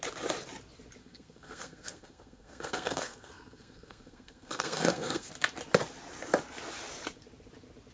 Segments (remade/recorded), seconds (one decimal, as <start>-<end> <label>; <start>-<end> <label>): 0.0-1.0 recorded; 1.0-5.3 remade; 5.3-7.9 recorded